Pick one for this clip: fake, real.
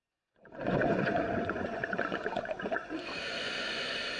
fake